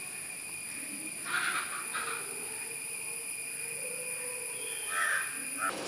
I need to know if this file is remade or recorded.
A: recorded